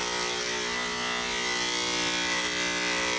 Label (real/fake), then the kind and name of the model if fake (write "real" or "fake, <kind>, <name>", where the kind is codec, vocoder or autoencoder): real